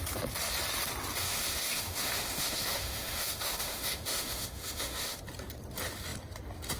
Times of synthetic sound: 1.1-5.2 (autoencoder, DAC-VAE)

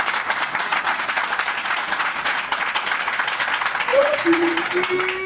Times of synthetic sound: 0.7-1.2 (vocoder, Vocos); 1.6-2.6; 3.9-4.5

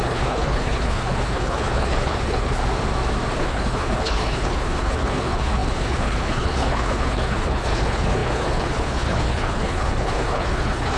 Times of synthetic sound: 0.0-2.6 (codec, HILCodec); 3.4-11.0

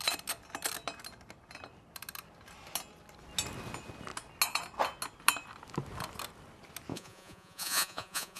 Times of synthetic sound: 6.9-8.4 (vocoder, Vocos)